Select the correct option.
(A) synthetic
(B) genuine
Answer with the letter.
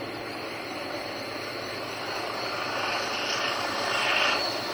B